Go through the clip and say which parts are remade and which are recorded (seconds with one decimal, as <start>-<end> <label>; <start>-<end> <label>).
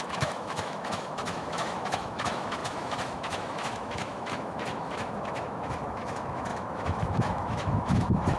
0.0-8.4 remade